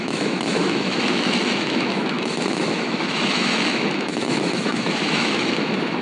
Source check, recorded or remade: remade